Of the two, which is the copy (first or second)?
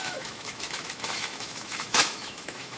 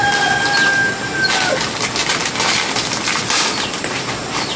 first